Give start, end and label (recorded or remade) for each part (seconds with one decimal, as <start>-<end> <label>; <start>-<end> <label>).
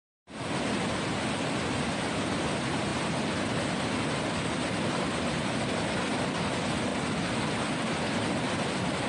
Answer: 0.0-9.1 recorded